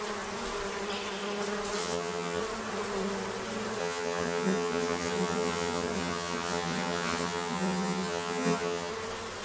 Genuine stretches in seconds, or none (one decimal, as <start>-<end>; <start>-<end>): 0.0-1.8; 2.4-3.8; 8.9-9.4